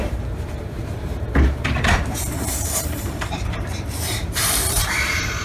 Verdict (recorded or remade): remade